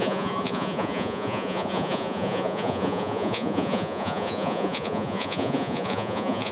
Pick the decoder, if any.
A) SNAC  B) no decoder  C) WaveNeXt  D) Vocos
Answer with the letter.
D